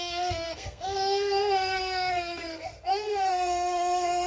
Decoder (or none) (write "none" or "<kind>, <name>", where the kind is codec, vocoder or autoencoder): codec, SNAC